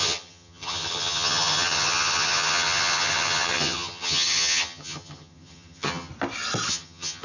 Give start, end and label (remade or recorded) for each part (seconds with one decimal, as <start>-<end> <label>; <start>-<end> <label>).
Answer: 0.0-6.1 remade; 6.1-6.7 recorded; 6.7-7.2 remade